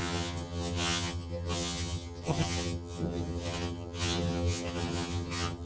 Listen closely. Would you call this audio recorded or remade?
remade